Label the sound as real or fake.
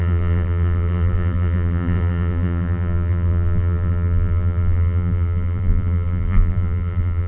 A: fake